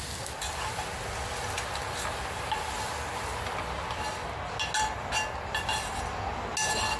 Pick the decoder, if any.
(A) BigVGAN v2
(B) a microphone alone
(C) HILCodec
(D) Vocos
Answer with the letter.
B